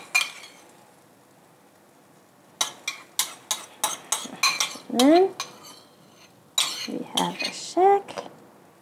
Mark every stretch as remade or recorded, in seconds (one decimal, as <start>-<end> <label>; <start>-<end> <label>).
0.0-8.8 recorded